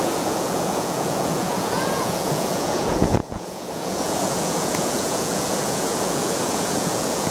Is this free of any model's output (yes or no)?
no